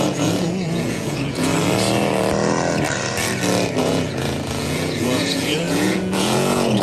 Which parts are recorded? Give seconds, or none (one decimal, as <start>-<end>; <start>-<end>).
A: 1.5-3.8